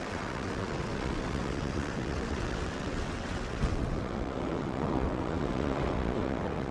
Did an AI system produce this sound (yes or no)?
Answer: yes